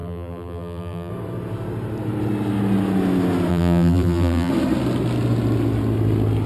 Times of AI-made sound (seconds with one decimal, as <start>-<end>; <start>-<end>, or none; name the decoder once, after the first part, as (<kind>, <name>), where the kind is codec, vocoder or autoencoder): 0.0-1.1 (vocoder, BigVGAN v2); 3.5-4.5